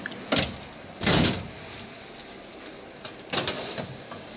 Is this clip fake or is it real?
real